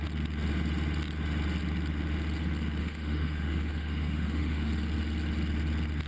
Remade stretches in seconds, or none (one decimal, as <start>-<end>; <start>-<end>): 2.8-4.7

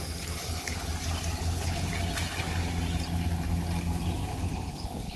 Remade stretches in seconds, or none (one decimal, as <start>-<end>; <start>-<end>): 0.4-0.9; 1.4-1.9; 4.3-5.2

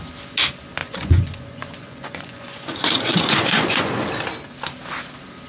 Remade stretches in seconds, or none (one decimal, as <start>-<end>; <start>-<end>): 0.8-3.9